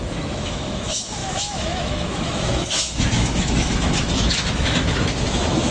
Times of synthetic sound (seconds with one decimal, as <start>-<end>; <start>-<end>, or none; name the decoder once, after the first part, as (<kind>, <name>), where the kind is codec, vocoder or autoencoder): 0.0-5.7 (autoencoder, DAC-VAE)